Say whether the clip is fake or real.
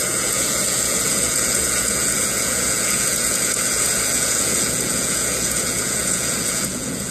fake